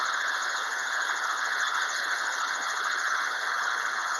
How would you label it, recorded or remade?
remade